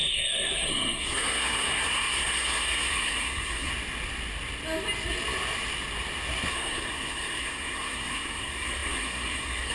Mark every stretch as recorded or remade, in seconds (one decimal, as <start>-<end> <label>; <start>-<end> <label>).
0.0-3.7 remade; 3.7-6.5 recorded; 6.5-9.7 remade